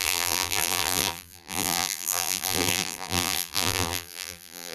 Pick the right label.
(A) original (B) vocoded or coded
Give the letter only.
B